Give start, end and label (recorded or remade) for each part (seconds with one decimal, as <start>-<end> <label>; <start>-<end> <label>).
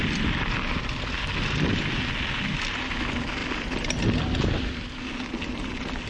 0.0-6.1 recorded